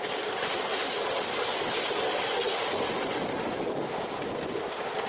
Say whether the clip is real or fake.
real